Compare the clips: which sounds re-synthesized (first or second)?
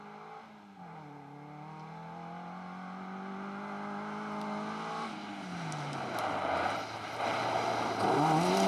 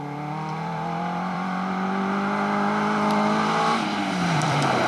second